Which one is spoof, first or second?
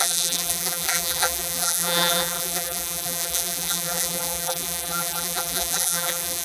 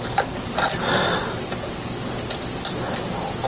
first